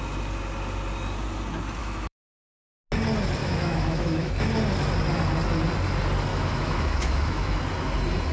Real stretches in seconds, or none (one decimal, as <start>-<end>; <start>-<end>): 0.0-1.8; 2.4-3.4; 4.3-6.3; 7.6-8.3